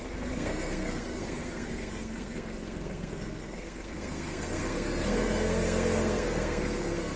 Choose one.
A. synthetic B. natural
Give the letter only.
A